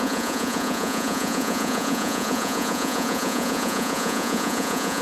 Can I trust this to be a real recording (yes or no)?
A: no